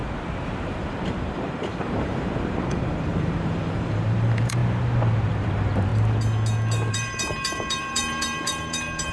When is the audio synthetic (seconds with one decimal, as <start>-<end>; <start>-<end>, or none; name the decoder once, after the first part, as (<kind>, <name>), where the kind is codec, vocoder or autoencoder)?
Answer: 0.6-4.6 (vocoder, BigVGAN v2); 5.3-5.9; 6.9-9.1